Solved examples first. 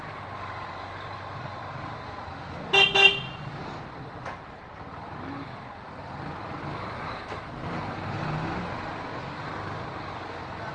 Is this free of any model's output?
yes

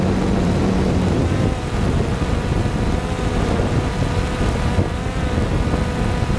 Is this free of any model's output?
yes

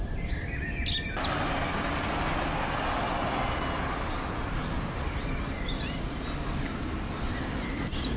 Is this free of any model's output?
yes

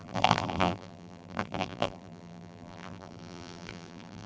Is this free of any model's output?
no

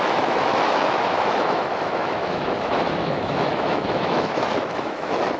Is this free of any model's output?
no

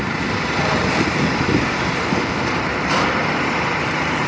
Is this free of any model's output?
no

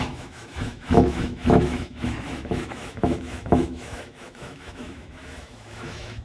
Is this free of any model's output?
no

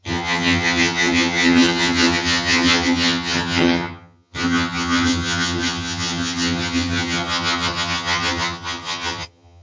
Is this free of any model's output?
no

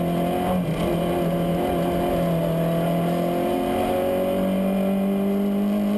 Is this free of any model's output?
yes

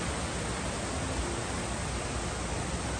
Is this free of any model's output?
yes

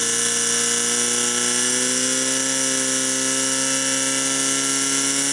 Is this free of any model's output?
yes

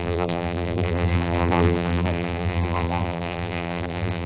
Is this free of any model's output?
no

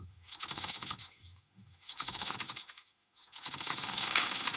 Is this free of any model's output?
no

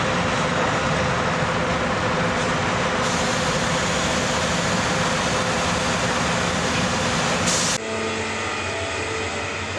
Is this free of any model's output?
yes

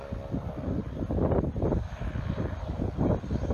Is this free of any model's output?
yes